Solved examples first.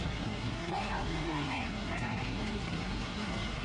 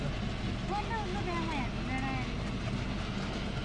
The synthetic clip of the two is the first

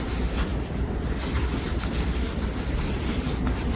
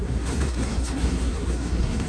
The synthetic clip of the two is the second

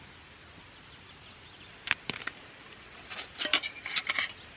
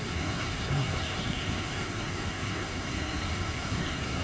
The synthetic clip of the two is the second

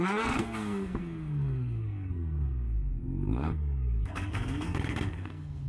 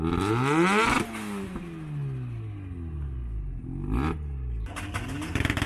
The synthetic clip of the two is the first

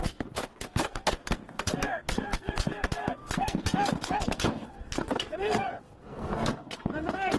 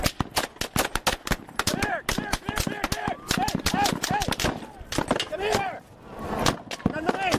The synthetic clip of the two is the first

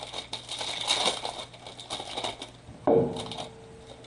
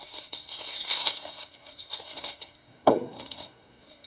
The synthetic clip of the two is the second